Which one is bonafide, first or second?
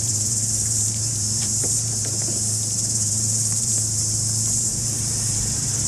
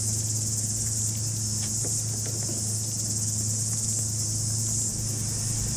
second